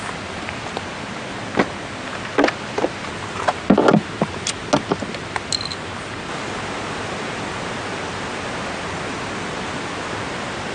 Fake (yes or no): no